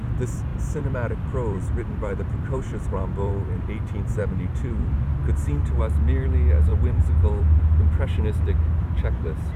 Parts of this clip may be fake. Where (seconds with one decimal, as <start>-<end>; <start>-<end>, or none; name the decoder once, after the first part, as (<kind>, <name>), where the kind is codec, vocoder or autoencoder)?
0.5-3.3 (vocoder, BigVGAN v2); 6.7-8.2